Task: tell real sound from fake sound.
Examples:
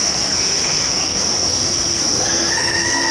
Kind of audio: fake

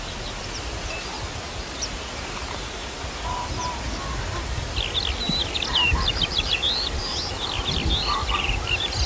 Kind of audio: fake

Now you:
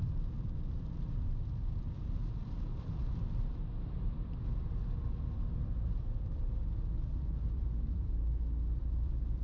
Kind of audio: fake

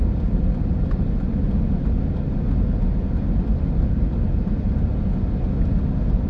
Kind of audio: real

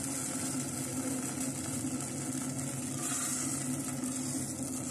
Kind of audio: real